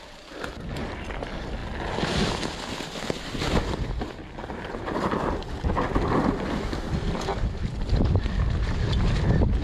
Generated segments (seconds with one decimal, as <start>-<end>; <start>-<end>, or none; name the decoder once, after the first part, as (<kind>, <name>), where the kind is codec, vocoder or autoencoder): none